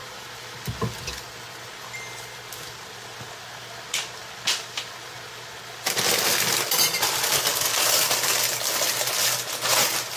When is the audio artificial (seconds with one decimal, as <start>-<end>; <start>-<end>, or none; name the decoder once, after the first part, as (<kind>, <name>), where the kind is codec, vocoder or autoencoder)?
none